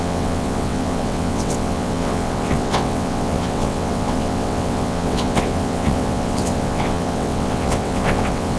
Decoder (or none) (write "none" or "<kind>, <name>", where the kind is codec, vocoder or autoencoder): vocoder, WaveNeXt